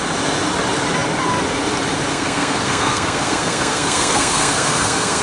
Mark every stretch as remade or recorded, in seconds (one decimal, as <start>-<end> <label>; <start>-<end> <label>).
0.0-2.1 recorded; 2.1-5.2 remade